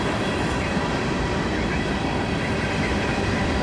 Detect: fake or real fake